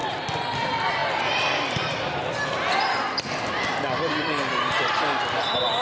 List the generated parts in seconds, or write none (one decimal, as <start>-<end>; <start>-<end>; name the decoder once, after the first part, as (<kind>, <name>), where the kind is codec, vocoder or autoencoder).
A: none